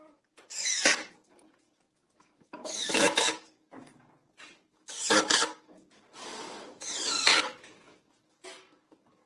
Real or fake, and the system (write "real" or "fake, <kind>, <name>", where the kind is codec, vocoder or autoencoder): fake, codec, DAC